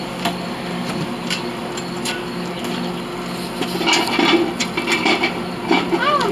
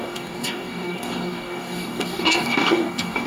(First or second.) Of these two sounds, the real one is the first